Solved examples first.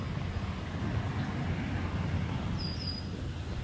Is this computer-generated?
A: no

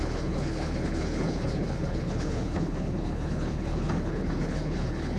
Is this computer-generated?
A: yes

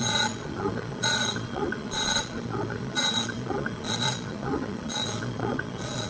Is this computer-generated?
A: yes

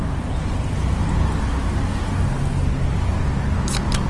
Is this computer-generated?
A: no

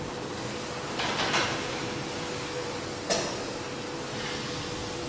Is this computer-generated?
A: no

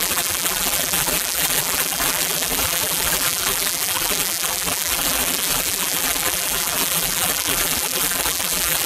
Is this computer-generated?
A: yes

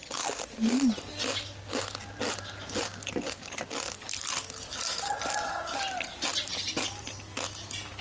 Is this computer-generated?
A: no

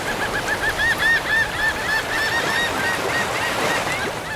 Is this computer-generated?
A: no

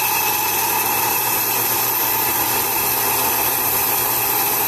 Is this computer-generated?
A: no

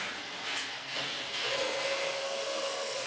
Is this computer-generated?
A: yes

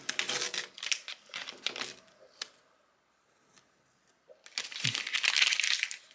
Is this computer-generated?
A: no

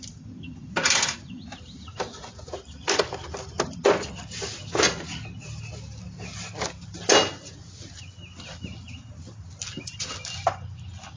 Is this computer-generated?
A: no